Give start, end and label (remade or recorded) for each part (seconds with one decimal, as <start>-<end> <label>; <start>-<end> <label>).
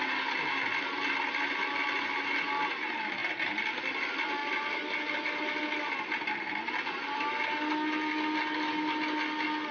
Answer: 0.0-9.7 recorded